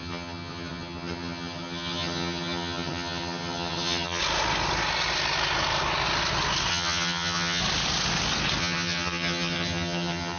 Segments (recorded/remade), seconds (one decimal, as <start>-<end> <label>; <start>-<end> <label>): 0.0-4.2 remade; 4.2-6.7 recorded; 6.7-7.6 remade; 7.6-8.6 recorded; 8.6-10.4 remade